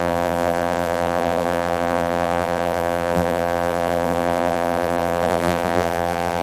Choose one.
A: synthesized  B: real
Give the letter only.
A